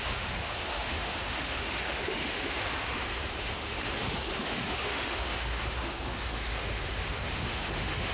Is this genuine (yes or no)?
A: no